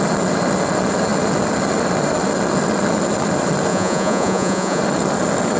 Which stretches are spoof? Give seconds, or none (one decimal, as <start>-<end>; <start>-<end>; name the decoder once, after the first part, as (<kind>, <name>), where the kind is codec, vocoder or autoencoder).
3.7-4.8 (vocoder, Vocos)